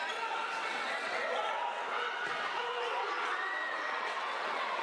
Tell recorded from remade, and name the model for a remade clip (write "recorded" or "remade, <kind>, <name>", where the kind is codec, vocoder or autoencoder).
remade, vocoder, WaveNeXt